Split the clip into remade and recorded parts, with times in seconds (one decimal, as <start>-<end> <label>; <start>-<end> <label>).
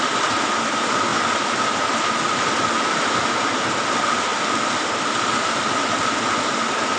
0.0-7.0 recorded